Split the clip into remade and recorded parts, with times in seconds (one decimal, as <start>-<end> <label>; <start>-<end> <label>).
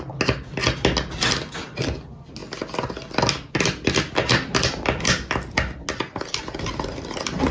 0.0-7.5 recorded